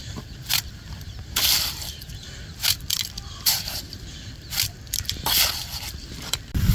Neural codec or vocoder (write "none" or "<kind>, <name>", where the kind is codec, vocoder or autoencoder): vocoder, BigVGAN v2